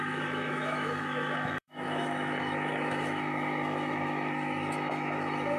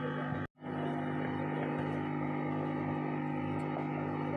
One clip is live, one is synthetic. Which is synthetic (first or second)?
first